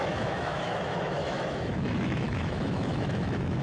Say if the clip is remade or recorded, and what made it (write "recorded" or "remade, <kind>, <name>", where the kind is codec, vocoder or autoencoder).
remade, autoencoder, DAC-VAE